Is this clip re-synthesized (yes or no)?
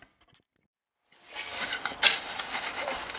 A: no